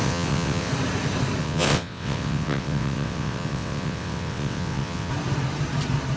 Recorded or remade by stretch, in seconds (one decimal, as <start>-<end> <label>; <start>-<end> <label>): 0.0-0.7 remade; 0.7-1.4 recorded; 1.4-5.1 remade; 5.1-6.2 recorded